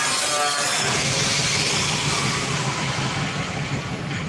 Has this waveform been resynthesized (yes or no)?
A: no